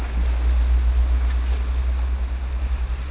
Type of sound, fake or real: real